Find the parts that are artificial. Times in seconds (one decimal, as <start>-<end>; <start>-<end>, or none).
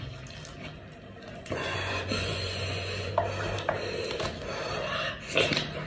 1.4-3.1